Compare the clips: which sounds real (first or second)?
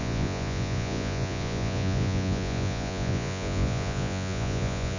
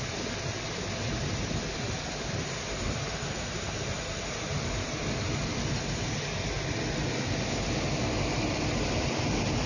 second